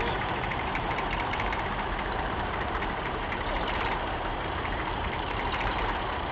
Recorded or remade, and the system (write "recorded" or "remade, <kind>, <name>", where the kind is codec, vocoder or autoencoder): remade, vocoder, BigVGAN v2